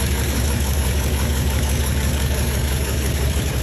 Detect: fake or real fake